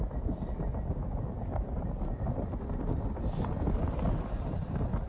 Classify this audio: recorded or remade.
recorded